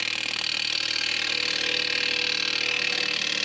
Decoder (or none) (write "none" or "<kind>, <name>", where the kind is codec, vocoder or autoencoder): none